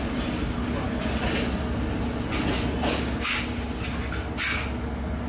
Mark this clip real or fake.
real